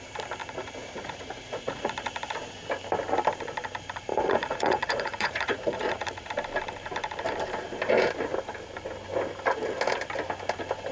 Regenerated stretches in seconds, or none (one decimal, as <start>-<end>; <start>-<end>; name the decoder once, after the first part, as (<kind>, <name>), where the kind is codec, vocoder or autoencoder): 0.4-2.3 (vocoder, Vocos); 4.1-6.3